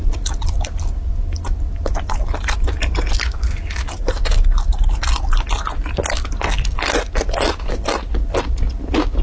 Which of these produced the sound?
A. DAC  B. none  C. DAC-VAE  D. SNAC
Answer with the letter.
B